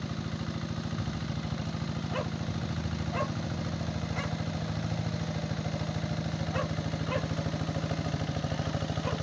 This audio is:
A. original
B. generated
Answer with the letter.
A